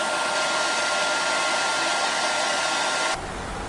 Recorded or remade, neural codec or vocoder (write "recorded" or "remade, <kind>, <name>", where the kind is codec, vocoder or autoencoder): recorded